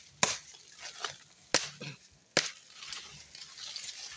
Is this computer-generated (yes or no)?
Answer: no